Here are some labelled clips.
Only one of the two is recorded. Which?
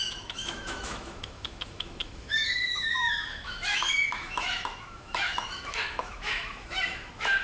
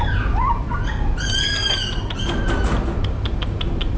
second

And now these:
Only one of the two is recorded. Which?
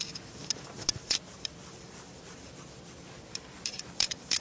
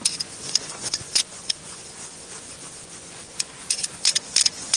first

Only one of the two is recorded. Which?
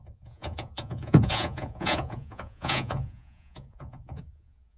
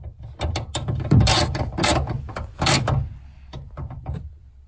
second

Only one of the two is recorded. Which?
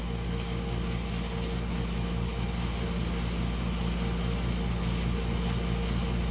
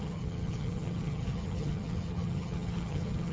first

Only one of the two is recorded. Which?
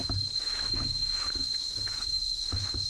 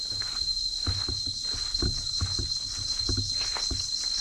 second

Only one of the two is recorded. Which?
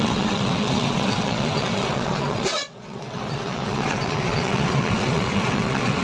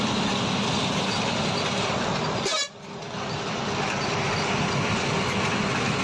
second